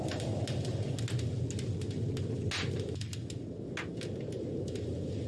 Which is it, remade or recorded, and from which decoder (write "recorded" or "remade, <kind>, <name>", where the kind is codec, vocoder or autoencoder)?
recorded